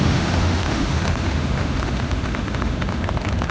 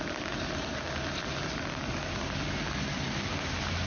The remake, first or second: first